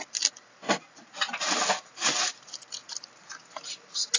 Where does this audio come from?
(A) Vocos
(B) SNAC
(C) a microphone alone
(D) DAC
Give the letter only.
C